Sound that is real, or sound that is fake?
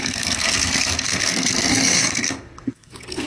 fake